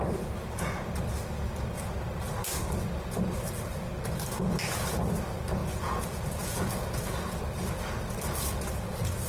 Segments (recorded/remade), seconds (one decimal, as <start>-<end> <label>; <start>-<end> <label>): 0.0-5.6 recorded; 5.6-7.0 remade; 7.0-9.3 recorded